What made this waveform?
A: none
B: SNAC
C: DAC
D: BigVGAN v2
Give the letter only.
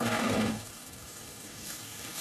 C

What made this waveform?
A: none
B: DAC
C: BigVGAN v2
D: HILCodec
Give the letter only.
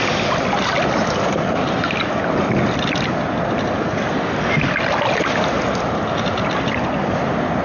A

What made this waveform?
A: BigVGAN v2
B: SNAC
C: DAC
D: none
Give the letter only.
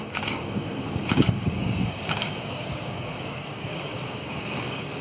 C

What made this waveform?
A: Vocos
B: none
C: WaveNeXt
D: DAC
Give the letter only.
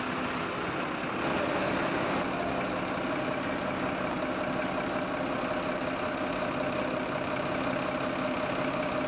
B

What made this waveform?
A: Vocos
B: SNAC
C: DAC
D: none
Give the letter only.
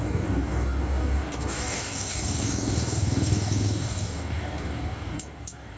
C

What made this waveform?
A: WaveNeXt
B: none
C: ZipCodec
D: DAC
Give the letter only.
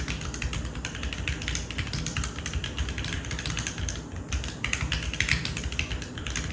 B